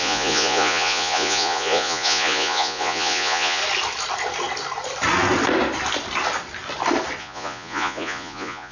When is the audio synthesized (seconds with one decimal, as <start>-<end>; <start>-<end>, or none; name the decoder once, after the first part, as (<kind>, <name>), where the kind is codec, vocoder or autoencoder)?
0.0-3.6 (vocoder, Vocos); 7.2-8.7